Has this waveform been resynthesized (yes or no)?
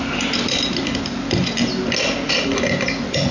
no